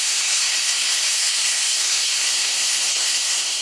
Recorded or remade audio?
remade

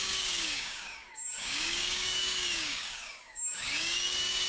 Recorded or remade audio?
remade